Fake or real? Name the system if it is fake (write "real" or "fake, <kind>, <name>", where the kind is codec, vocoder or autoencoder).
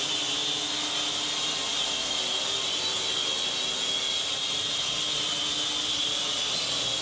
real